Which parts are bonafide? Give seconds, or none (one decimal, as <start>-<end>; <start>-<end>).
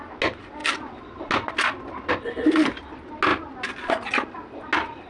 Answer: 0.0-5.1